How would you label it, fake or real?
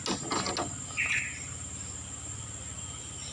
real